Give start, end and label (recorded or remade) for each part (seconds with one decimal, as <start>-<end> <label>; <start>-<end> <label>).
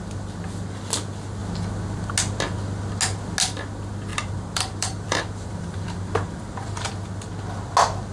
0.0-4.1 recorded; 4.1-6.9 remade; 6.9-8.1 recorded